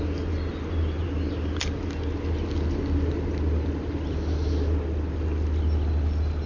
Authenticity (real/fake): real